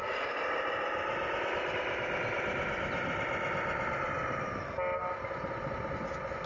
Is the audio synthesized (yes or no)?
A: no